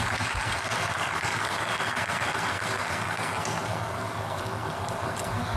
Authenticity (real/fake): fake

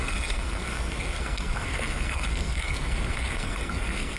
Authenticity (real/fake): fake